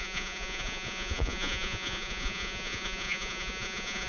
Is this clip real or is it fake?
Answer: fake